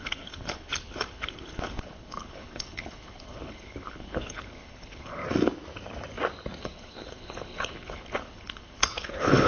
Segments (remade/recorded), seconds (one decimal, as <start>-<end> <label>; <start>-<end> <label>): 0.0-5.2 remade; 5.2-6.6 recorded; 6.6-9.5 remade